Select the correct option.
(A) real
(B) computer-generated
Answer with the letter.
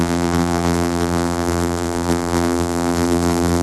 B